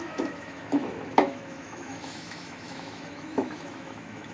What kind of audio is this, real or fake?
fake